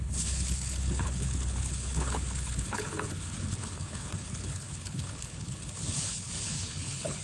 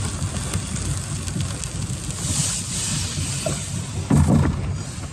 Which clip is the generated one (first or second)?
first